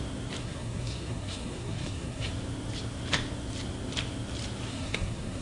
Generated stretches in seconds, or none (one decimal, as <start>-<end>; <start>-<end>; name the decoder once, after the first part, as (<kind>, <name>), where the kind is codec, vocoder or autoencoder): 0.4-2.3 (codec, SNAC); 4.7-5.4